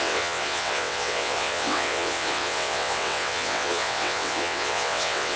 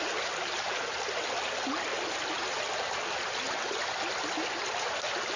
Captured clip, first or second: second